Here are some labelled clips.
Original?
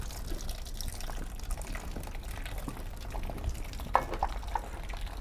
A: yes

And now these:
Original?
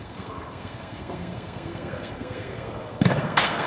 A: no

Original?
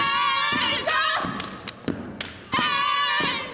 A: yes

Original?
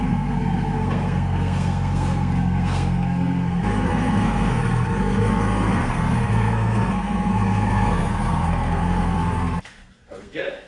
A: no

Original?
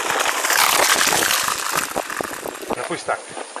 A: yes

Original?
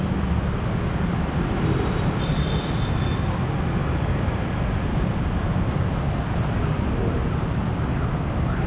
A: yes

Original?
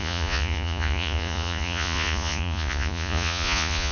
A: no